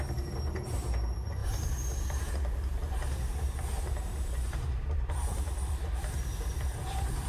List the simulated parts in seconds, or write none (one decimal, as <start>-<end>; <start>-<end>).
1.4-2.3; 2.8-7.3